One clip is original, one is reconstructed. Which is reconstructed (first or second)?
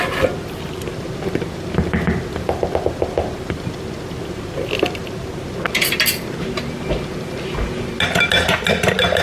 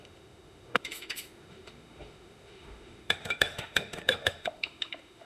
second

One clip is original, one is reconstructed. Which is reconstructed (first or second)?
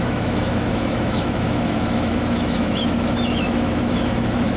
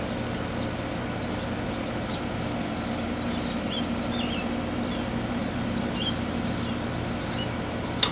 first